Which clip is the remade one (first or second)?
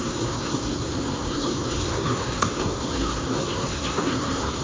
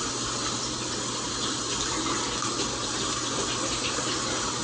first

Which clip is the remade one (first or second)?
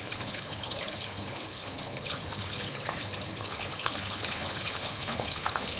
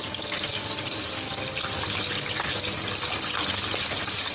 first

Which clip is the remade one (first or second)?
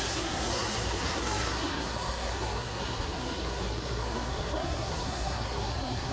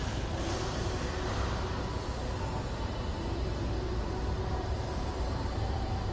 first